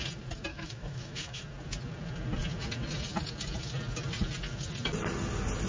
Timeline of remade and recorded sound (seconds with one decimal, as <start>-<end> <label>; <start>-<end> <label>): 0.0-0.5 recorded; 0.5-1.4 remade; 1.4-5.7 recorded